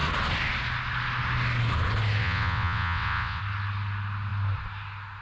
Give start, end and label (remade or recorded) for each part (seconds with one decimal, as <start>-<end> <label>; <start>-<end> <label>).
0.0-2.2 recorded; 2.2-3.4 remade; 3.4-5.2 recorded